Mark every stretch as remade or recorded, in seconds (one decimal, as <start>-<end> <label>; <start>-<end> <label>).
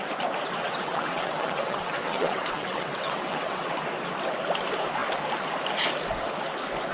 0.0-0.6 recorded; 0.6-3.6 remade; 3.6-6.9 recorded